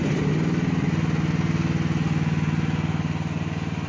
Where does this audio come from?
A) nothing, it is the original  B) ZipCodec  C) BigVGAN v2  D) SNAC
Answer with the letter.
A